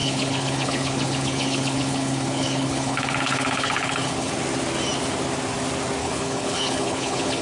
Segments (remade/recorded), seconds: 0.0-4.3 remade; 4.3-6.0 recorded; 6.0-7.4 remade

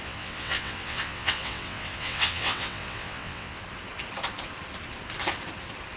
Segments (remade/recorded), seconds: 0.0-3.6 remade; 3.6-6.0 recorded